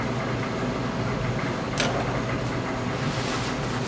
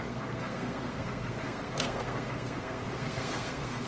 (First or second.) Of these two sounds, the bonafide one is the first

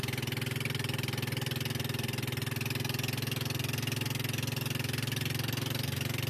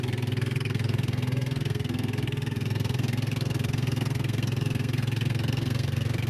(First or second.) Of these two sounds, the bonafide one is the first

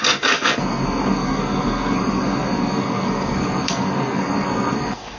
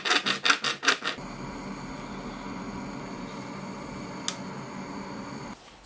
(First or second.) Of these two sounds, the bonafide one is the second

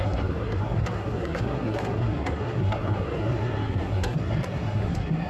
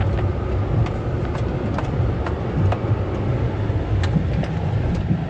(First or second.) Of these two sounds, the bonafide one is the second